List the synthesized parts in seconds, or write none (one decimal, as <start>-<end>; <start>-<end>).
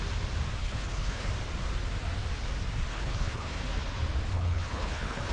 0.6-1.3; 2.9-3.6; 4.3-5.3